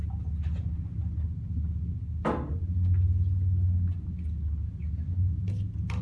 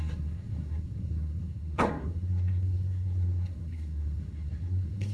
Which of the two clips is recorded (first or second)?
first